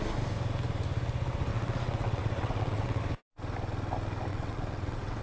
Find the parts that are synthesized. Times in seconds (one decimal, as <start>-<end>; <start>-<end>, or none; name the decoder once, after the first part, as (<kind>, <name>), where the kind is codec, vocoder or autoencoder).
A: 1.5-3.0 (vocoder, WaveNeXt); 4.3-5.2